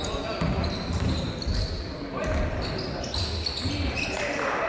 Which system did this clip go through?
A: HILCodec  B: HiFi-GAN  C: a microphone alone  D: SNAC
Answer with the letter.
C